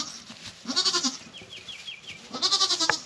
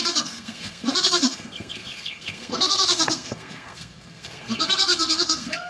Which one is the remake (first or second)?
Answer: second